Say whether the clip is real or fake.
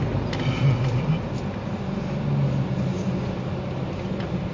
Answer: real